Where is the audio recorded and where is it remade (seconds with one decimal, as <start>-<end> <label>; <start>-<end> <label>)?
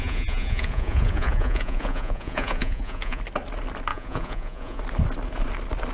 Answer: 0.0-3.2 remade; 3.2-3.9 recorded; 3.9-4.8 remade; 4.8-5.9 recorded